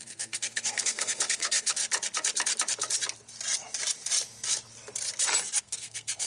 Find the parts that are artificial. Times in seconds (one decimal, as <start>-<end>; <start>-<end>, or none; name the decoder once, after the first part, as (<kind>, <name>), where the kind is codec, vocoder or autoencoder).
0.0-1.8 (codec, SNAC); 5.6-6.3